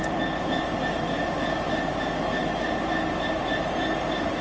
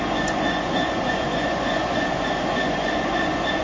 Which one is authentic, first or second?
first